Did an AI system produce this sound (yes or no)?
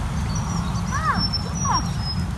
no